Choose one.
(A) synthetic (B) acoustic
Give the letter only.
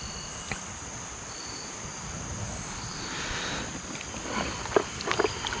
B